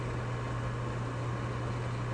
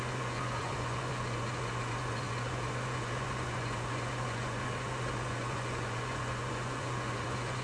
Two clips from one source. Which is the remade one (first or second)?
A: second